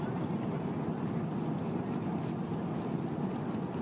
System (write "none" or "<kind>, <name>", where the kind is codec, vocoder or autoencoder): none